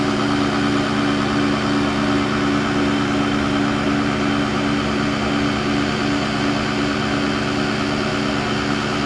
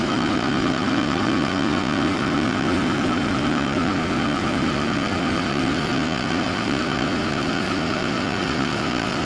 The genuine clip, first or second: first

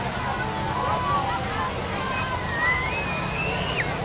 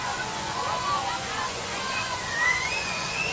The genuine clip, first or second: first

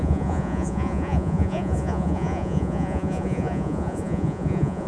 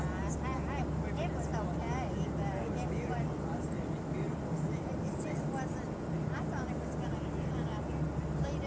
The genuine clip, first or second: second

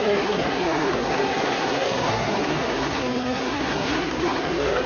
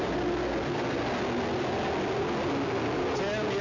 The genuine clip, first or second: second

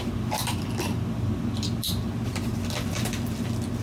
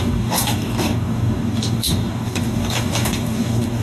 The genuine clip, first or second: first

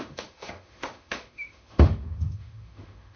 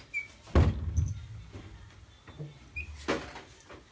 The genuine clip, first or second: second